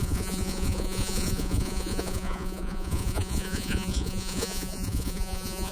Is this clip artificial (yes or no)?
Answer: yes